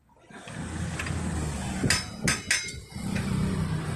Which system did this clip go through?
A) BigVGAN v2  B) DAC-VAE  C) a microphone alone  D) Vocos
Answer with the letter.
C